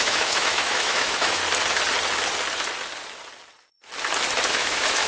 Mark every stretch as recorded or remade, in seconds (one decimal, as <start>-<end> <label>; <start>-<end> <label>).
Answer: 0.0-1.4 remade; 1.4-4.5 recorded; 4.5-5.1 remade